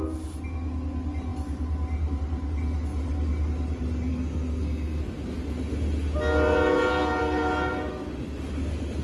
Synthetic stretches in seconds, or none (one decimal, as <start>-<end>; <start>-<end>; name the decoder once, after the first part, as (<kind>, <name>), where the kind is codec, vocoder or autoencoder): 4.1-5.0 (codec, SNAC)